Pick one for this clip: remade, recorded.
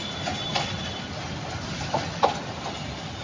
recorded